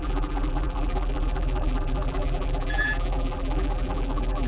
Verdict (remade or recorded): remade